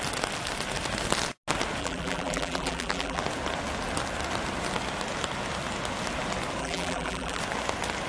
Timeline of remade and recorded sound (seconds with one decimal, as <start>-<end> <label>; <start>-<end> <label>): 0.0-1.8 recorded; 1.8-3.2 remade; 3.2-6.6 recorded; 6.6-7.4 remade; 7.4-8.1 recorded